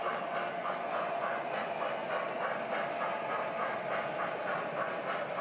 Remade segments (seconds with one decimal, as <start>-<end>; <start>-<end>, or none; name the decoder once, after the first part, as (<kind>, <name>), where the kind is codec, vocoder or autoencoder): 0.6-1.6 (vocoder, Vocos)